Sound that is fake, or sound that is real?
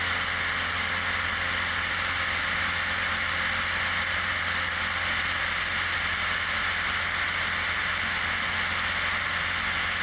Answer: real